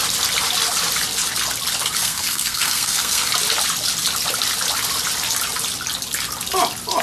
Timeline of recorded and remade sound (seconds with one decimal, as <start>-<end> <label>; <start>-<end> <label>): 0.0-2.0 recorded; 2.0-3.3 remade; 3.3-7.0 recorded